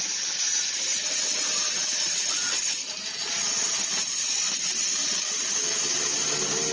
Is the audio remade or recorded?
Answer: remade